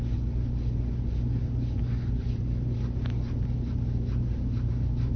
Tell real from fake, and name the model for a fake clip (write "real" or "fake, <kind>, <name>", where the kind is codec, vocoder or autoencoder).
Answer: real